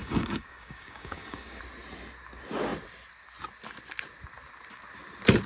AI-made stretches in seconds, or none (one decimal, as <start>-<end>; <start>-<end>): 0.0-1.6